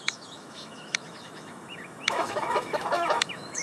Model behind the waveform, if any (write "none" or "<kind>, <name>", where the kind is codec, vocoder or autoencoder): autoencoder, DAC-VAE